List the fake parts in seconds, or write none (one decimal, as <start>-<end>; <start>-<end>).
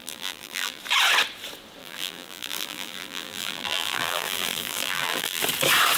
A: 0.0-0.8; 1.8-5.4